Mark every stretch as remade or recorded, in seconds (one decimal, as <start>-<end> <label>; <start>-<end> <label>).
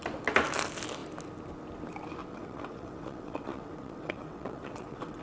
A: 0.0-2.2 recorded; 2.2-5.2 remade